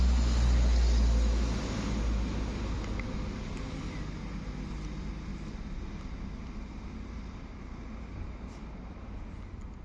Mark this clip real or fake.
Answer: real